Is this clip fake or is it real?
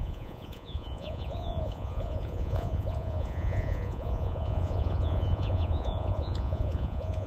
fake